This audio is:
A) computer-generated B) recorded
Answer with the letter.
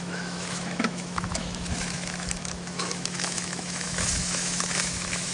A